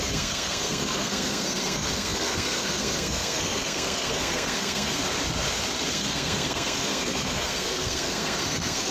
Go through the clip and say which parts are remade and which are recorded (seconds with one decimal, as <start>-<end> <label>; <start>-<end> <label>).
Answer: 0.0-5.0 remade; 5.0-5.9 recorded; 5.9-8.9 remade